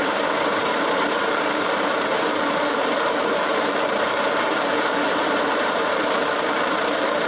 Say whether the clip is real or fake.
fake